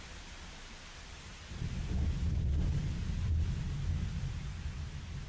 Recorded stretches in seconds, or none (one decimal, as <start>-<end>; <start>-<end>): 0.0-1.3; 4.5-5.3